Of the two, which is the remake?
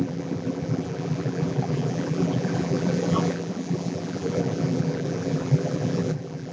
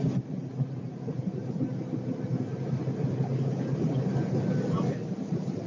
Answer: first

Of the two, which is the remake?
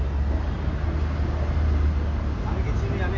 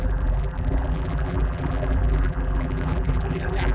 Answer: second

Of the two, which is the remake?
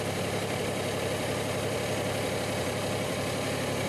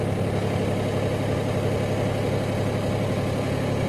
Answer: first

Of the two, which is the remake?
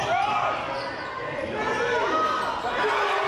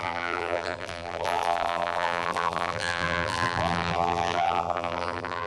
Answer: second